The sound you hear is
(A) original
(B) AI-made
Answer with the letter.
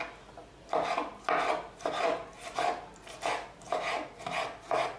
A